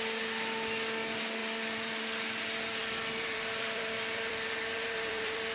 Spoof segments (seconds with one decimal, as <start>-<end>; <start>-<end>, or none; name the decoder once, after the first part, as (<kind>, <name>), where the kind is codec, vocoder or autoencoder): 1.4-2.0 (vocoder, BigVGAN v2); 2.8-5.5